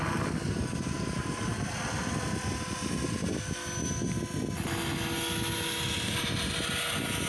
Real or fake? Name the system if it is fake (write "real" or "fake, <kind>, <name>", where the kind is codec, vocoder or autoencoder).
real